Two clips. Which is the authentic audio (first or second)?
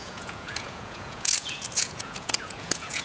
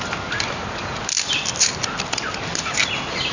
second